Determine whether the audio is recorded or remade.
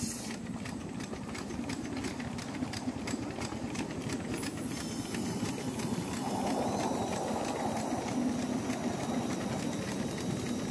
recorded